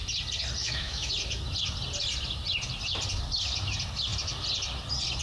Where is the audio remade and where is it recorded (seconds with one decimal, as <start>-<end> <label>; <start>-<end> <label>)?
0.0-0.6 recorded; 0.6-1.1 remade; 1.1-5.2 recorded